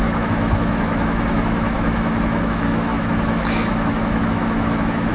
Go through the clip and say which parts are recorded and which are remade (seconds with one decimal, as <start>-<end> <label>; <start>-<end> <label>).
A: 0.0-5.1 remade